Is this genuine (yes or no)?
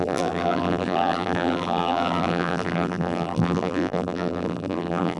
no